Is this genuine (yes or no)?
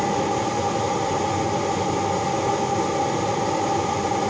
yes